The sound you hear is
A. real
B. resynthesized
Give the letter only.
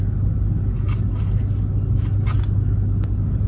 A